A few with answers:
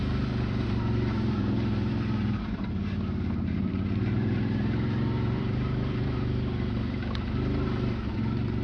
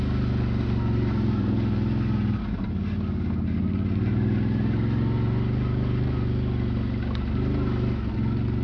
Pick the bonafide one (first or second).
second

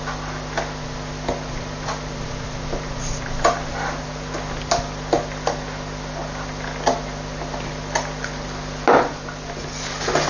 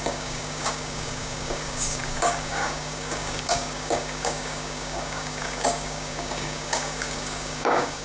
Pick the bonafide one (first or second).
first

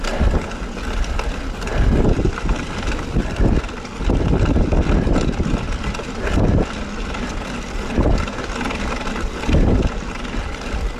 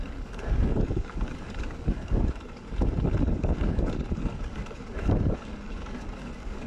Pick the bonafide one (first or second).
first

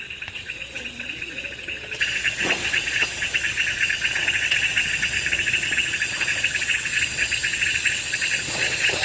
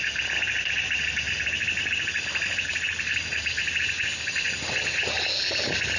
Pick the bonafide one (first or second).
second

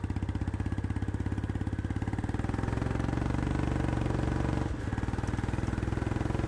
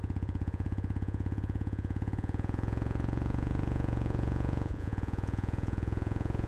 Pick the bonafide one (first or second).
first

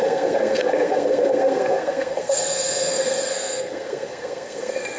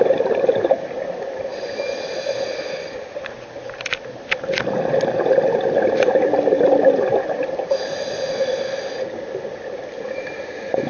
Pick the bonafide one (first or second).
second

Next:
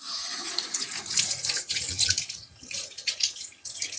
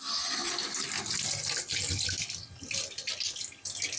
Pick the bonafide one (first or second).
second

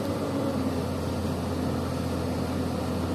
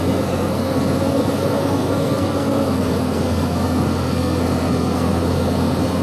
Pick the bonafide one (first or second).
first